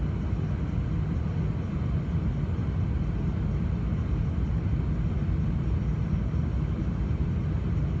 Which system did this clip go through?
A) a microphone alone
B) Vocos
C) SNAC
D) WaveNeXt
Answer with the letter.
A